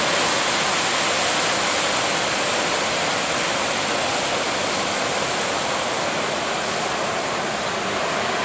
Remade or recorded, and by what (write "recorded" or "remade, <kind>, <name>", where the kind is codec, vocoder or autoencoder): recorded